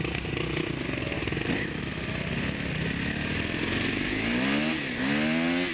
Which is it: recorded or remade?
recorded